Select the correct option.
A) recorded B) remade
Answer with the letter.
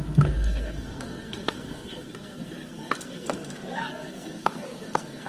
B